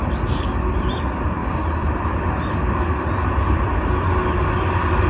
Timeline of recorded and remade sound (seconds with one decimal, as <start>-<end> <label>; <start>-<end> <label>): 0.0-5.1 recorded